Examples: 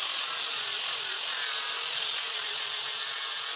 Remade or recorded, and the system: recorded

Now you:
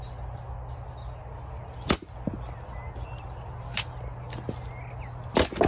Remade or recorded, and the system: recorded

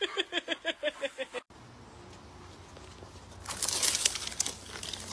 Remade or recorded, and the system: recorded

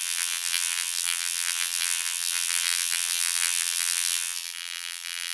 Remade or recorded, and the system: remade, vocoder, BigVGAN v2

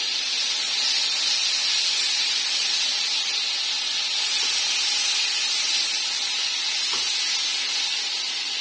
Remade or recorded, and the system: recorded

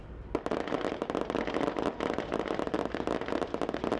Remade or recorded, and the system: recorded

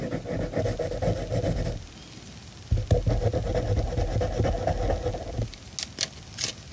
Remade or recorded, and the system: recorded